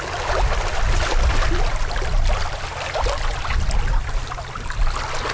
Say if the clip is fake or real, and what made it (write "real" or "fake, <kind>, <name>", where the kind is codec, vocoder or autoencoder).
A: real